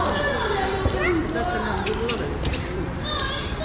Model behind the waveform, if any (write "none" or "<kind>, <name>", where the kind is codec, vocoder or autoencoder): none